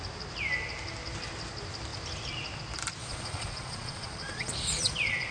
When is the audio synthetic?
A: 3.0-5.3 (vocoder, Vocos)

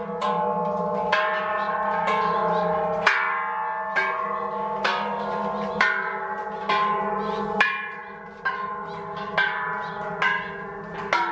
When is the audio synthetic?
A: none

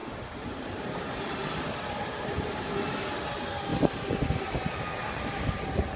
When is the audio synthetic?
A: 0.0-2.6 (vocoder, BigVGAN v2)

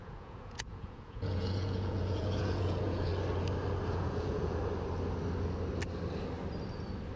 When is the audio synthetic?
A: 0.0-3.1 (vocoder, Vocos); 3.9-4.6